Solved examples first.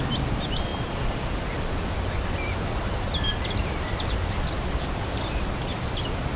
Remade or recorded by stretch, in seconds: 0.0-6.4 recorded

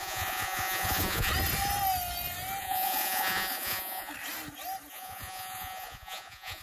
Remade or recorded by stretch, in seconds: 0.0-1.3 remade; 1.3-2.6 recorded; 2.6-4.1 remade; 4.1-4.9 recorded; 4.9-6.6 remade

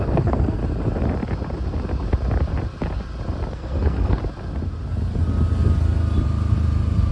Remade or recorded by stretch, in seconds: 0.0-0.6 remade; 0.6-3.5 recorded; 3.5-4.2 remade; 4.2-7.1 recorded